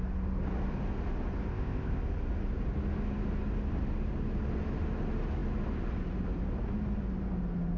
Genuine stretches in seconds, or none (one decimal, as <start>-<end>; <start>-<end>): 0.0-1.5; 2.0-7.8